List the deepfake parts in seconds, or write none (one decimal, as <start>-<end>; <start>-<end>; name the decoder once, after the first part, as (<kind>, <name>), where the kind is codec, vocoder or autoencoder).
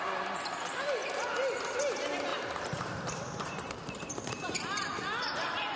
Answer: 1.0-1.8 (vocoder, BigVGAN v2); 2.3-5.8